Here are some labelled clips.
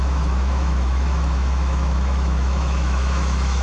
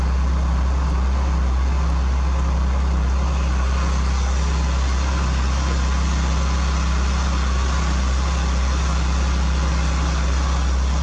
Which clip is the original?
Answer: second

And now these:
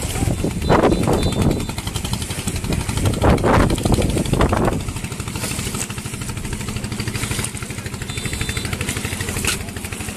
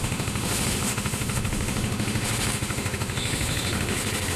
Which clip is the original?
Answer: first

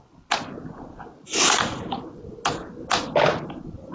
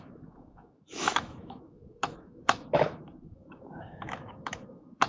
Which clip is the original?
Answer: first